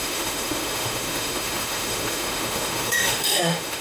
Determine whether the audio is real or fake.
fake